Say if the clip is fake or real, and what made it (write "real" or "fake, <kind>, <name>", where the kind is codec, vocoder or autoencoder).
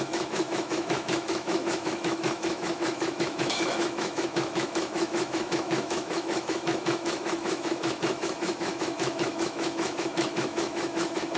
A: fake, autoencoder, DAC-VAE